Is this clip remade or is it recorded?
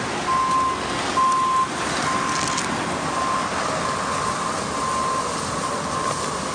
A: recorded